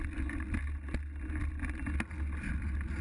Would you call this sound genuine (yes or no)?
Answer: yes